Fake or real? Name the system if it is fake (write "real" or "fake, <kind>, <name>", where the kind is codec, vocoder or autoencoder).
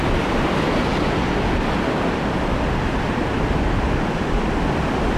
real